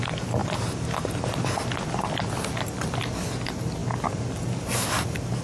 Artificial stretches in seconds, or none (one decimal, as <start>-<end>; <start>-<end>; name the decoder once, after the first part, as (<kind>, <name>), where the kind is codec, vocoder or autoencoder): 0.4-1.2 (vocoder, BigVGAN v2)